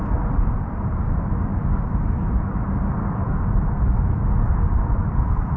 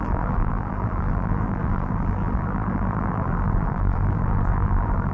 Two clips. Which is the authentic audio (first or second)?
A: first